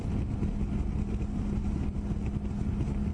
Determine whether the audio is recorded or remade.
recorded